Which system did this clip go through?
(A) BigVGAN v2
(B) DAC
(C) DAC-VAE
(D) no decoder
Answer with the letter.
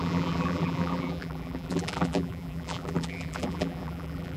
A